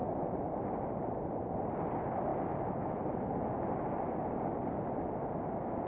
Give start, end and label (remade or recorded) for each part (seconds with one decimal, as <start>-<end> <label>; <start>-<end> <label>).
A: 0.0-5.9 recorded